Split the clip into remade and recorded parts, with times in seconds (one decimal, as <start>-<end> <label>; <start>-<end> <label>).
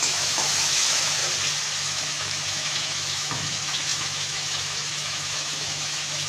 0.0-1.2 remade; 1.2-1.8 recorded; 1.8-6.3 remade